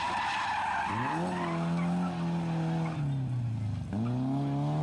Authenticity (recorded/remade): recorded